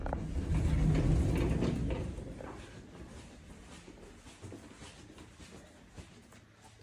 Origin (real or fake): real